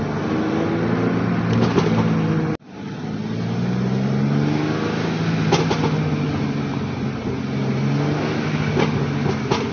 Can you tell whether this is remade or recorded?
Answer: recorded